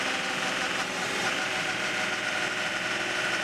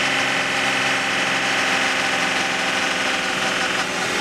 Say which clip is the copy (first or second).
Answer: first